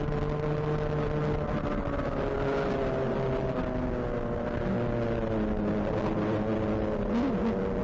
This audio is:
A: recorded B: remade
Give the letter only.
A